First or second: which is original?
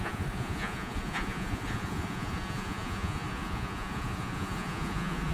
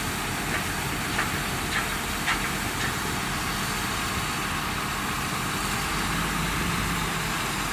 second